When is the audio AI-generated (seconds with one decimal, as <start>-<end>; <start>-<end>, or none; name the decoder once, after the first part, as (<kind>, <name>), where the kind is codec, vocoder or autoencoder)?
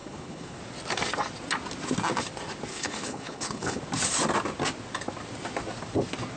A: 0.0-0.6 (codec, HILCodec); 2.7-3.8